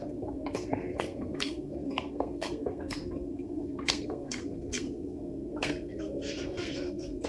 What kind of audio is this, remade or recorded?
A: remade